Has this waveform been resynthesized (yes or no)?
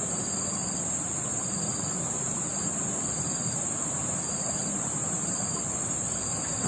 yes